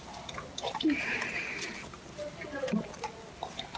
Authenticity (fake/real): real